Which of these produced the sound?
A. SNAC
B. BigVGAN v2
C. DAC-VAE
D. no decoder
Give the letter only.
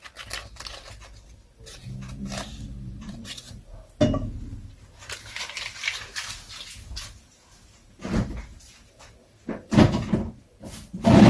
D